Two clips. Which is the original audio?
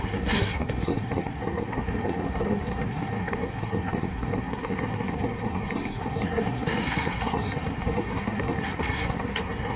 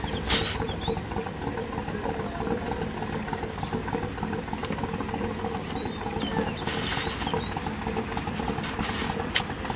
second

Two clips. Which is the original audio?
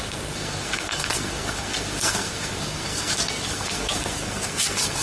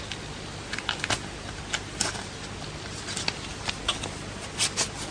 second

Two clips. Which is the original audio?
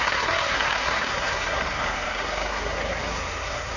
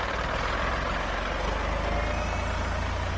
second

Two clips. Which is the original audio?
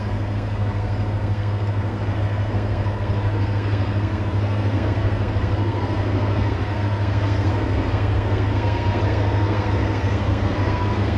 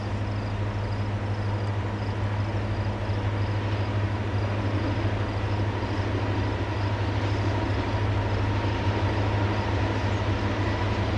second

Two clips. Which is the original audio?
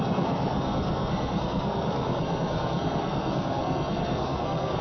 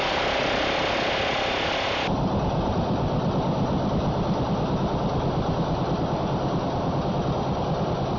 second